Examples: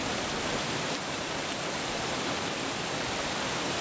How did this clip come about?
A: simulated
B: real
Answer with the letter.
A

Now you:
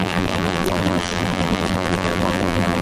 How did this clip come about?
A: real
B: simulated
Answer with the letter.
B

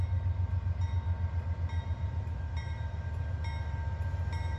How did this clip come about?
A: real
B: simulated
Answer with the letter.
A